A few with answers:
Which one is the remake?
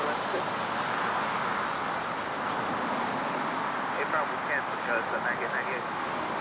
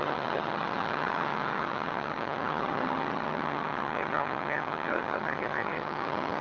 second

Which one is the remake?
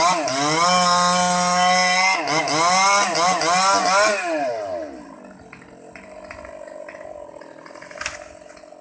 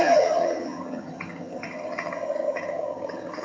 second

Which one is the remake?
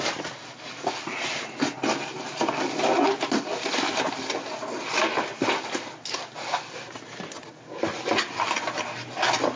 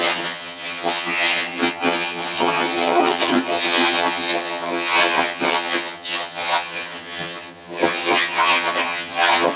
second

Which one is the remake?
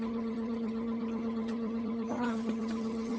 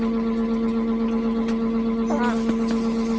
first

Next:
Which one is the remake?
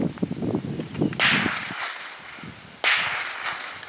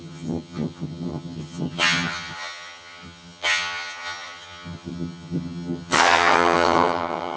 second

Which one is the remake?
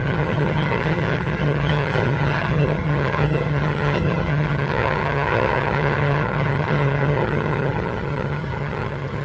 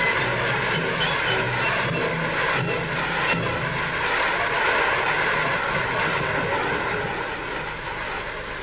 first